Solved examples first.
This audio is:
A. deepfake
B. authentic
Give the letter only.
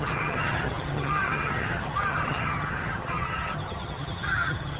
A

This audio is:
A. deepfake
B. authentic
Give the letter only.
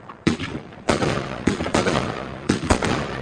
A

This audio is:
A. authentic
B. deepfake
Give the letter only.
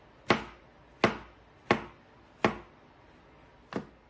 A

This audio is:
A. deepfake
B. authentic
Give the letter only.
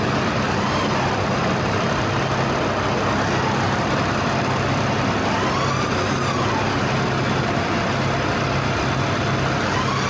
B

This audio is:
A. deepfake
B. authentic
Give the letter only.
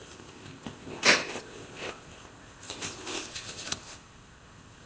A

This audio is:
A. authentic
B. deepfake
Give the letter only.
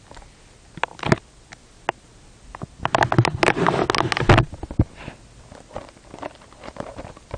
A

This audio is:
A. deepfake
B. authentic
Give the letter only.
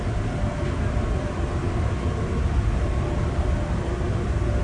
B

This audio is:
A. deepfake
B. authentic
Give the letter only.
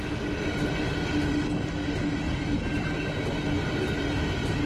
B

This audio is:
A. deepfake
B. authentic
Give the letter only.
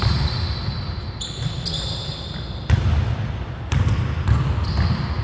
B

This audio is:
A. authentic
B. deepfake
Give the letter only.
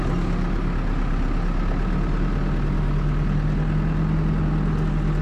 A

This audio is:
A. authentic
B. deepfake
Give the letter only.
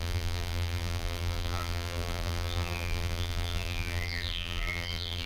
B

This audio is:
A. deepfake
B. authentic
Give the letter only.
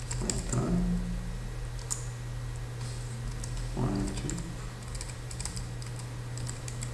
B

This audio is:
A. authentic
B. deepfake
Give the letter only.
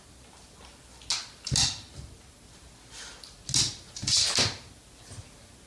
A